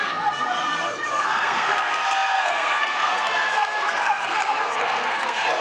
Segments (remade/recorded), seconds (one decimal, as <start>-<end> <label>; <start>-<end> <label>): 0.0-5.6 remade